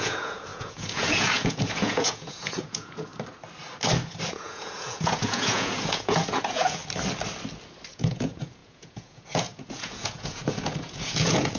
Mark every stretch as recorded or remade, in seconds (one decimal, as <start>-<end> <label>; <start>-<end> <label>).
0.0-3.1 remade; 3.1-4.3 recorded; 4.3-6.8 remade; 6.8-7.9 recorded; 7.9-11.6 remade